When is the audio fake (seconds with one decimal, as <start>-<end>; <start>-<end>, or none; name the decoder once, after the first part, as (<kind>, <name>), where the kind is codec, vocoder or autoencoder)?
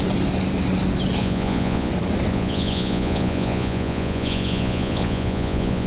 1.2-1.9 (vocoder, Vocos); 2.3-5.9